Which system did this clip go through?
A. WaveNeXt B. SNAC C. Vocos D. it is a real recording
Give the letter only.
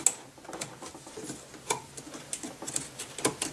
D